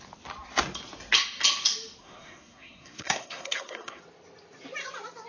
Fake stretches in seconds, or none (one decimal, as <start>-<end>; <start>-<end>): 2.0-4.0

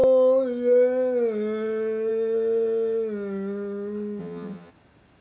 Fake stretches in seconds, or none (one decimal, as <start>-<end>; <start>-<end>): 4.2-4.7

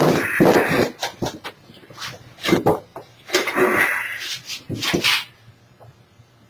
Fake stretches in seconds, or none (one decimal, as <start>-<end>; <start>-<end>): none

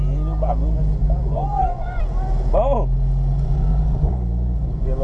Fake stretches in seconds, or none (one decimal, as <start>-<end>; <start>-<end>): 1.0-2.0; 3.3-4.1

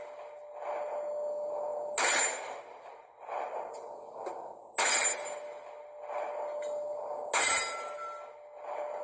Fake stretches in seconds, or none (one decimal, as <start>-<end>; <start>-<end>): none